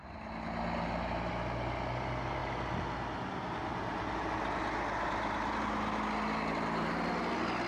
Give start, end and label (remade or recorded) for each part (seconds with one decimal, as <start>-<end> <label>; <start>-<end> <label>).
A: 0.0-7.7 recorded

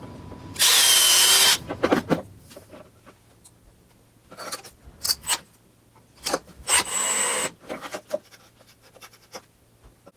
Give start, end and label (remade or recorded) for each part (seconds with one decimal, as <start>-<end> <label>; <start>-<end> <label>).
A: 0.0-10.2 recorded

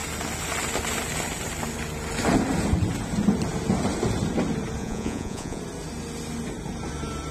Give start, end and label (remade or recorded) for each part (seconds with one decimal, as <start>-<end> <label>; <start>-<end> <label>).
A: 0.0-4.8 recorded; 4.8-5.6 remade; 5.6-7.3 recorded

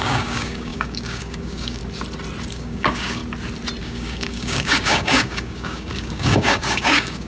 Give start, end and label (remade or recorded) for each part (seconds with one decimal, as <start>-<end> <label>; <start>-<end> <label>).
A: 0.0-1.8 remade; 1.8-2.5 recorded; 2.5-3.2 remade; 3.2-3.8 recorded; 3.8-7.3 remade

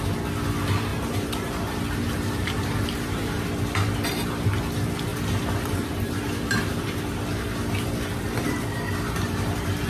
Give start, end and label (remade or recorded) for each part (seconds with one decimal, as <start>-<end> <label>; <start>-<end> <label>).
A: 0.0-0.9 recorded; 0.9-3.5 remade; 3.5-5.1 recorded; 5.1-7.2 remade; 7.2-9.9 recorded

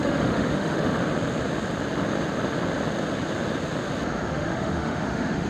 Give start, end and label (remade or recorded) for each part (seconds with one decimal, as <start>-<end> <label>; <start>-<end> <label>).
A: 0.0-1.0 remade; 1.0-4.3 recorded; 4.3-5.5 remade